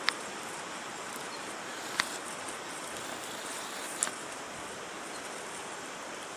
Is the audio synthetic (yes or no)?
yes